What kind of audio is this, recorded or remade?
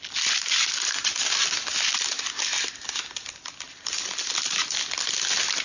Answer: recorded